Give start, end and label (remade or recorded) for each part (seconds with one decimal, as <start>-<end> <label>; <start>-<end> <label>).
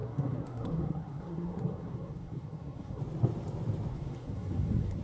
0.0-3.0 remade; 3.0-3.9 recorded; 3.9-5.0 remade